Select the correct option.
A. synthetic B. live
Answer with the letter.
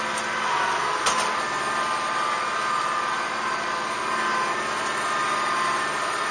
B